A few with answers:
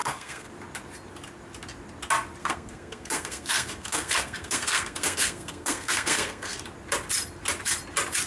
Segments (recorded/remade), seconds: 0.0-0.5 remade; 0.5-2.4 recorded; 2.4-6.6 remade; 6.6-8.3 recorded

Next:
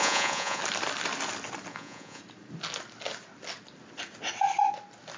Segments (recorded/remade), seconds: 0.0-0.6 remade; 0.6-1.7 recorded; 1.7-2.2 remade; 2.2-5.2 recorded

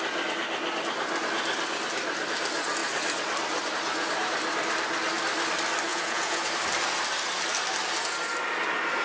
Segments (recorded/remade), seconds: 0.0-5.9 recorded; 5.9-6.5 remade; 6.5-9.0 recorded

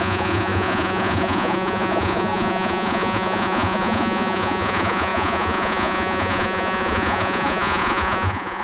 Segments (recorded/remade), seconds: 0.0-8.6 remade

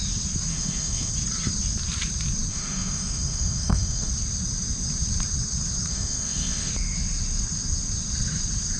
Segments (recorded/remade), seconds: 0.0-0.5 recorded; 0.5-1.1 remade; 1.1-2.5 recorded; 2.5-4.1 remade; 4.1-5.9 recorded; 5.9-6.7 remade; 6.7-8.8 recorded

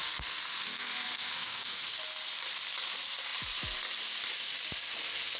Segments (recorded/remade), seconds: 0.0-2.0 remade; 2.0-5.4 recorded

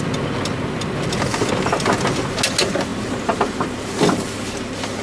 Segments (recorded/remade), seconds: 0.0-5.0 recorded

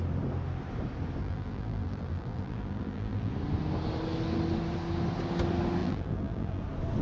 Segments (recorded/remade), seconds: 0.0-1.2 recorded; 1.2-3.3 remade; 3.3-5.8 recorded; 5.8-6.6 remade; 6.6-7.0 recorded